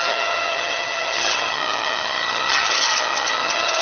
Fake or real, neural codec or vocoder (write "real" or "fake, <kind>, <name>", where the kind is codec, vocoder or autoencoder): fake, vocoder, HiFi-GAN